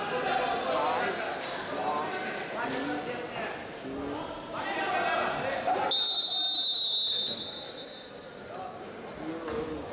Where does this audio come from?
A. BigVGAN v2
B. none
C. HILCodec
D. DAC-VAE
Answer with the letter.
B